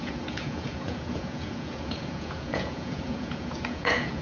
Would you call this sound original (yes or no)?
no